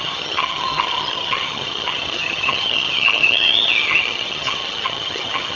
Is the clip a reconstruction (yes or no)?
yes